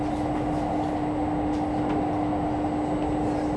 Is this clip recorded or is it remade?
recorded